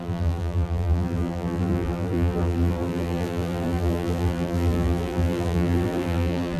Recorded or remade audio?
remade